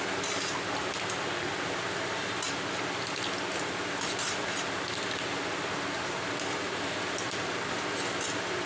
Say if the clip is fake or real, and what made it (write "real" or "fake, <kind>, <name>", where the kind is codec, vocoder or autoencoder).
real